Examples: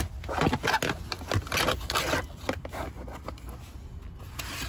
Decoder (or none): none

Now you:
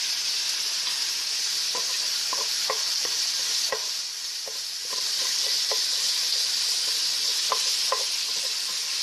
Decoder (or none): none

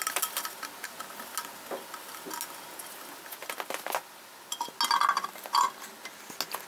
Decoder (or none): none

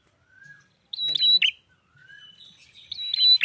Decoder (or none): none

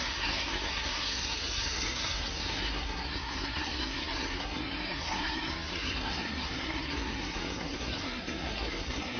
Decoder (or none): codec, SNAC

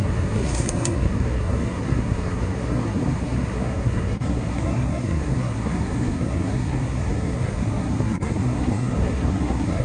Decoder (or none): codec, SNAC